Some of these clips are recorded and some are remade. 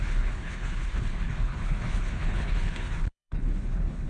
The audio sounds remade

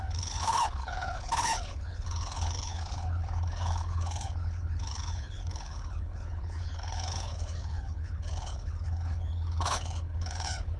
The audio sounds remade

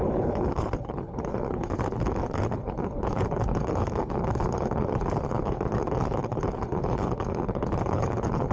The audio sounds remade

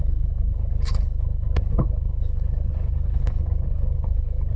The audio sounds remade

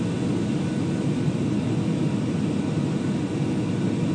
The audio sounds recorded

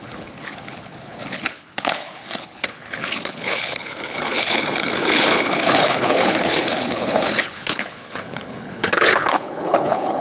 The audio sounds remade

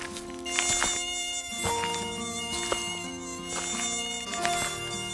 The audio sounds recorded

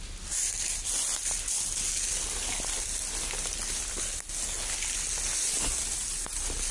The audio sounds recorded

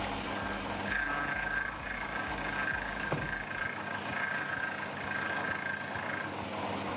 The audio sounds recorded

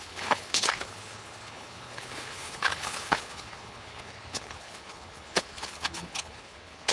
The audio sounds remade